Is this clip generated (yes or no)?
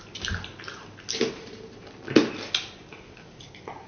no